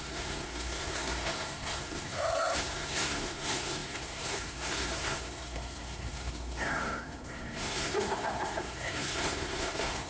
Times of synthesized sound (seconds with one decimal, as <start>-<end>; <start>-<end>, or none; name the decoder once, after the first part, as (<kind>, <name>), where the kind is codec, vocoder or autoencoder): 0.0-10.1 (codec, SNAC)